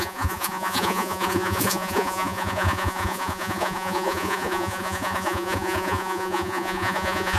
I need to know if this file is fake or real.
fake